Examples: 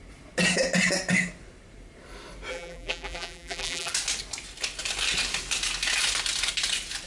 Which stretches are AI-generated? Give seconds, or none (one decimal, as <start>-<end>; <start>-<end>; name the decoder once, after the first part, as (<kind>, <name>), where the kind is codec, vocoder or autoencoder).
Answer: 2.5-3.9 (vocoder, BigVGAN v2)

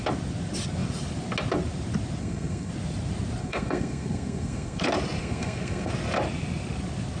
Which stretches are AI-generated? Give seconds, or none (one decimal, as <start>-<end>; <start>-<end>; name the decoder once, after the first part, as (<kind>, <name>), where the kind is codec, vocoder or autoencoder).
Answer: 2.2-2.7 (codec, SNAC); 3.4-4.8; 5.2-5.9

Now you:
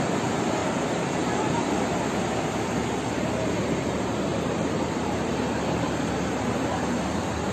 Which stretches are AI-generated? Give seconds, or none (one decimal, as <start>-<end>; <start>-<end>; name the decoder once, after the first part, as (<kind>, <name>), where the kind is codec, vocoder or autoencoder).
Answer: 0.6-2.0 (vocoder, BigVGAN v2); 4.3-5.3